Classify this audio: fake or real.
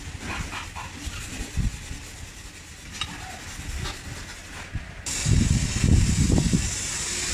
real